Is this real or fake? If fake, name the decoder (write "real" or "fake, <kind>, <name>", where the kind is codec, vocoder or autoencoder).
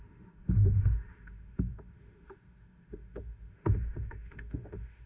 fake, autoencoder, DAC-VAE